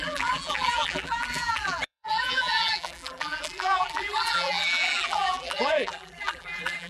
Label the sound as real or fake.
fake